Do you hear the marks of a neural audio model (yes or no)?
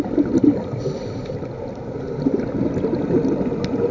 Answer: no